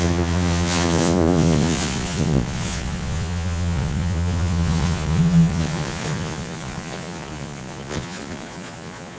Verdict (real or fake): fake